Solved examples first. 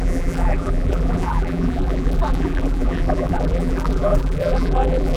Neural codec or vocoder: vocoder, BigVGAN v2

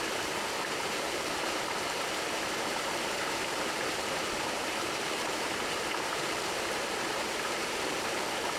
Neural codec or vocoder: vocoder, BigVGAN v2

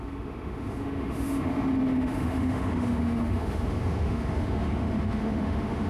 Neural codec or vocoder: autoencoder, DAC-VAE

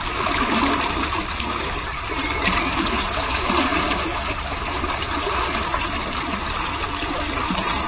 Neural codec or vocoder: vocoder, BigVGAN v2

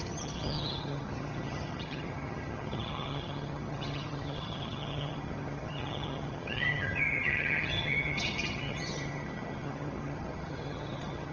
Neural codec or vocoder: vocoder, HiFi-GAN